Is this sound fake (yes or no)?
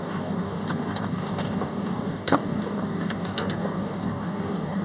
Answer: yes